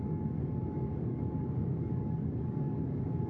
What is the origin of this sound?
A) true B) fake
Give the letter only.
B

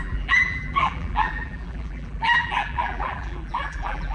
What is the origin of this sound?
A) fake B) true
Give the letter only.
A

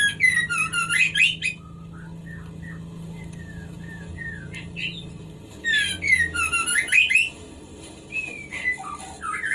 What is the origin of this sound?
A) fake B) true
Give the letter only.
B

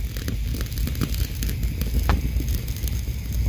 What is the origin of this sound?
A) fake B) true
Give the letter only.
B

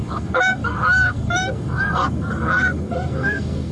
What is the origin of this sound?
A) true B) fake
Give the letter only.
B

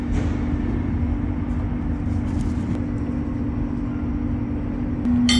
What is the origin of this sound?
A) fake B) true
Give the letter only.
B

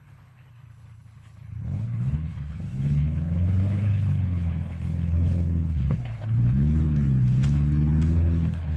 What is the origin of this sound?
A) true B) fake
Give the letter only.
B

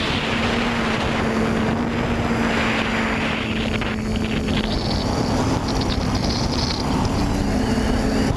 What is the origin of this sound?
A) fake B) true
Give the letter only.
B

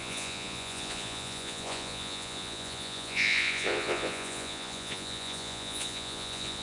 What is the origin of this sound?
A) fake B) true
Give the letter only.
A